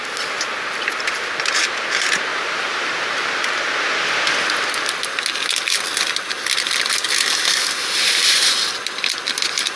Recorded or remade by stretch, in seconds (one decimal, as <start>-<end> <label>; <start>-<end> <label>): 0.0-2.3 recorded; 2.3-3.4 remade; 3.4-9.8 recorded